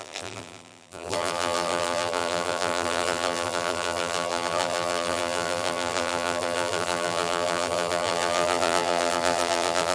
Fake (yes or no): yes